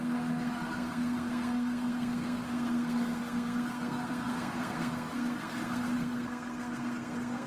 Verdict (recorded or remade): remade